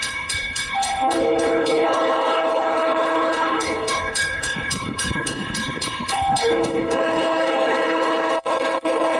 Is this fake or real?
fake